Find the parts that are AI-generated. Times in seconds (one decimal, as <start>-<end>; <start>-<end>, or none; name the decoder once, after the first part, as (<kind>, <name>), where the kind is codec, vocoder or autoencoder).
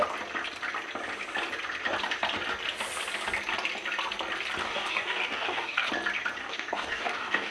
4.6-5.9 (codec, DAC); 6.4-7.5